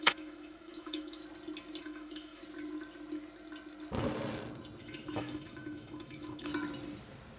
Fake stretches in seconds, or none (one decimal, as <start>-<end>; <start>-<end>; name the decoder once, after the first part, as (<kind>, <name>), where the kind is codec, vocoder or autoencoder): 0.0-1.2 (autoencoder, DAC-VAE); 1.8-2.4; 4.8-6.5